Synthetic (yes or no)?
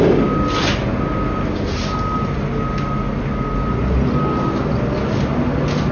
no